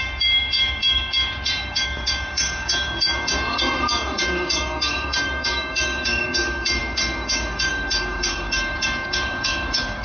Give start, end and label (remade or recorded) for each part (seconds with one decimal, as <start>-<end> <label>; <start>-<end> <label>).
0.0-10.0 remade